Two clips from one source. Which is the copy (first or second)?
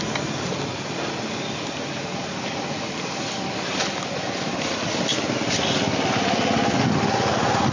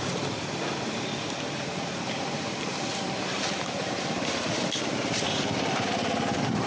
second